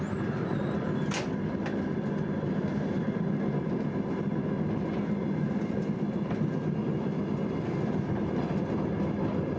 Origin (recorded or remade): recorded